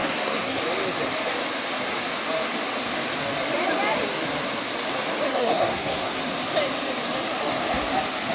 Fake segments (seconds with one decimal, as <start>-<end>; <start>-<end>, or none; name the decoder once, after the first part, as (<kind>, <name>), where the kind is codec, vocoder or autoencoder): 0.0-0.6 (codec, SNAC); 5.3-6.2